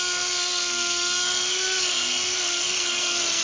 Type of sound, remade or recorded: remade